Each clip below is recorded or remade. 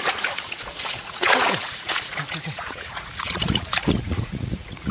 remade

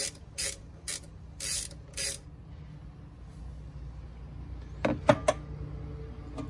recorded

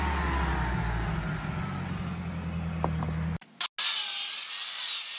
recorded